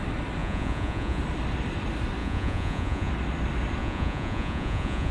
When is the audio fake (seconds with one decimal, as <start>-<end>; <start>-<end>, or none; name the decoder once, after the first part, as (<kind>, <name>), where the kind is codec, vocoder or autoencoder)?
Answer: 0.4-1.2 (vocoder, Vocos); 2.2-3.1; 3.8-5.1